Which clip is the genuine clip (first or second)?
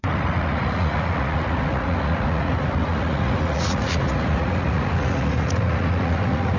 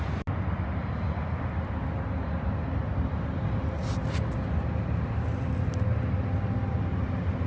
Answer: second